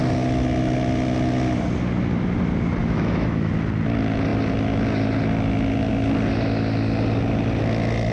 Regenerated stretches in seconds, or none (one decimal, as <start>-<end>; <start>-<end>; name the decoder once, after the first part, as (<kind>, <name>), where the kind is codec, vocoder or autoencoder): 2.8-3.5 (autoencoder, DAC-VAE)